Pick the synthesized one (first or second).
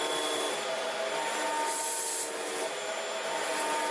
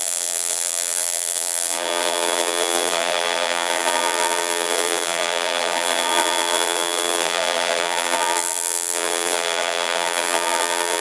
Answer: second